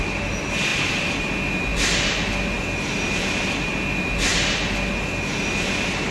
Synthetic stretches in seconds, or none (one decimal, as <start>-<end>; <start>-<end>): none

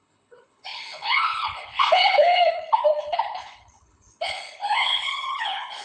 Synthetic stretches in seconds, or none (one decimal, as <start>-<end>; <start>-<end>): 0.0-5.8

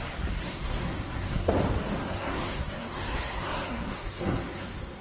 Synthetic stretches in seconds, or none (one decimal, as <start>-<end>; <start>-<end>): 0.4-1.5; 2.0-5.0

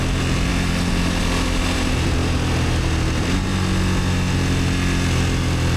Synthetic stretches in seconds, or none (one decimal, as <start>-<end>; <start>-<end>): none

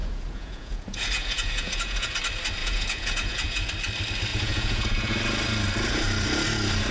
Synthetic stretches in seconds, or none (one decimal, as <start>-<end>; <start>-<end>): 0.0-2.1; 2.6-3.7; 4.3-5.1

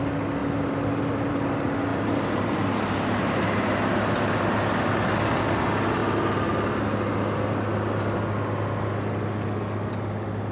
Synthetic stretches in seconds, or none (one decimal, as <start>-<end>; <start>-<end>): none